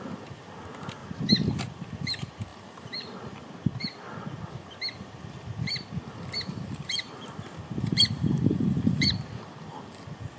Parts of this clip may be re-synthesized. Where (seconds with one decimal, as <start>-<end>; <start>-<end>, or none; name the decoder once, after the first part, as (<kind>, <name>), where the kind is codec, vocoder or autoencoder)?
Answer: 7.9-9.2 (vocoder, BigVGAN v2)

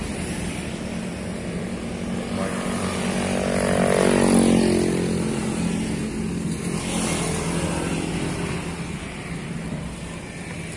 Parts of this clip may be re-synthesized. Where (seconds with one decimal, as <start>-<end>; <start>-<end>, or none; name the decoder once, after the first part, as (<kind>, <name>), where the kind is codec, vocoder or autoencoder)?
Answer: none

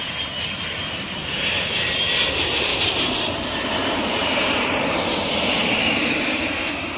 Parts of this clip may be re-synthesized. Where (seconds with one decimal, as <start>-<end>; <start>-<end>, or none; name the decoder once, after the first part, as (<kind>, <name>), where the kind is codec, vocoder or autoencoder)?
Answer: 0.0-7.0 (vocoder, BigVGAN v2)

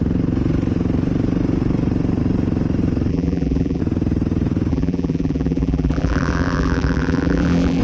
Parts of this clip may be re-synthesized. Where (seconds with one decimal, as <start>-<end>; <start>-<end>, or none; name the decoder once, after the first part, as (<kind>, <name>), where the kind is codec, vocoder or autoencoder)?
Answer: 3.1-3.8 (vocoder, BigVGAN v2); 4.7-7.8

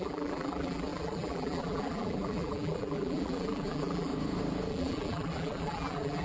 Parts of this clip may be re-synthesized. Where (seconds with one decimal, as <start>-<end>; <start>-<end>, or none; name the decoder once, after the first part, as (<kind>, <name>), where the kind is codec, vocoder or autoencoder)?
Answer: 0.0-4.1 (vocoder, BigVGAN v2); 4.7-6.2

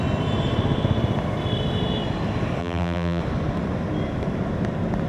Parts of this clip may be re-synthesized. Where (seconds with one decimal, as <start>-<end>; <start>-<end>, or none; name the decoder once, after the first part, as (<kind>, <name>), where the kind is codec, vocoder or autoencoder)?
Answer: 2.6-3.2 (vocoder, BigVGAN v2)

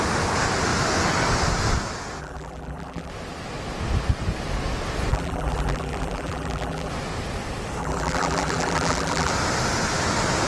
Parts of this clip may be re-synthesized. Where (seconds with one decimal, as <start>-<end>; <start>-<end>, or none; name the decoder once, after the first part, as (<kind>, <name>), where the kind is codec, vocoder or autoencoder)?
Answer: 2.2-3.1 (vocoder, BigVGAN v2); 5.1-6.9; 7.8-9.3

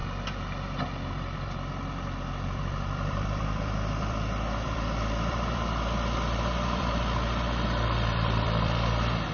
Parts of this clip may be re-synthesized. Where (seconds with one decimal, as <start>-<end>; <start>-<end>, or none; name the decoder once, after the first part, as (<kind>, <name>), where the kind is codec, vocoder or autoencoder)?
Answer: 1.1-9.3 (vocoder, BigVGAN v2)